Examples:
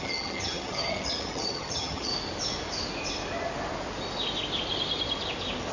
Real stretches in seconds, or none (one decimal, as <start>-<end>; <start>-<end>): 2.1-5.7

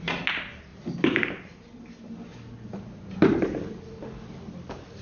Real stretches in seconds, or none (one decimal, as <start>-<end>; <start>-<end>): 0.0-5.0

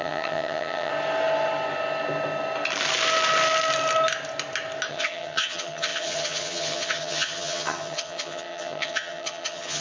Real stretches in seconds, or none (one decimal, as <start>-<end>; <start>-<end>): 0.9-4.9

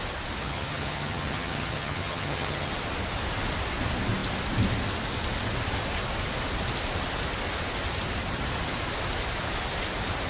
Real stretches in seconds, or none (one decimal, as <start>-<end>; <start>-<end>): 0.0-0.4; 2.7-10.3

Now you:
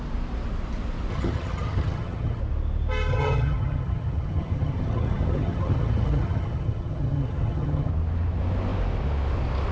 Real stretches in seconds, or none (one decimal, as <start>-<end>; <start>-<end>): 0.0-1.1; 2.4-3.1; 7.9-9.7